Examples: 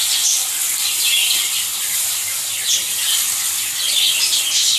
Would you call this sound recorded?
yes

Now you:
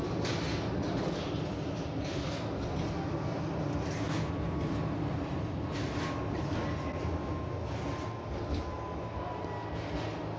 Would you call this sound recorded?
yes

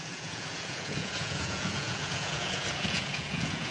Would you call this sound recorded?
no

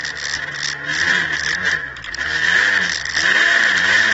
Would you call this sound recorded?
yes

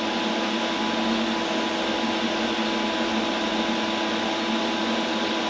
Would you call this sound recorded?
yes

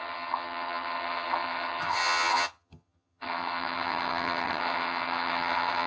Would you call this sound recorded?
no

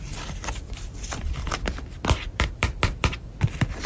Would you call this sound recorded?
no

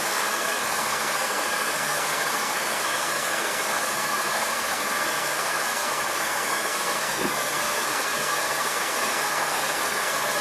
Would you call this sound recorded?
no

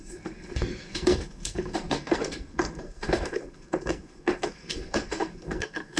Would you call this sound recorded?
no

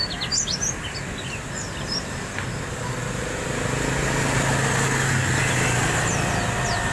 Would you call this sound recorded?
yes